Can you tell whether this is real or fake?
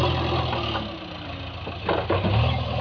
real